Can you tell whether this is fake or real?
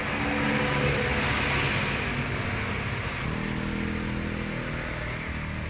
real